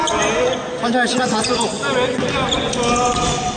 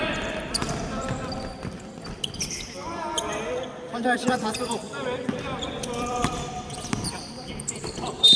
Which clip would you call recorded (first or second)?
first